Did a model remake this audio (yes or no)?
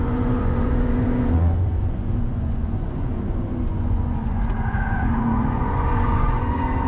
yes